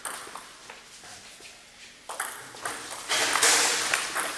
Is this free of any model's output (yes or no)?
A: yes